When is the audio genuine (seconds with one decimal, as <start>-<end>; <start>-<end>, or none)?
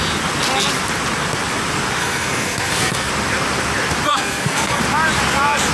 0.0-2.0; 3.1-4.1; 4.8-5.7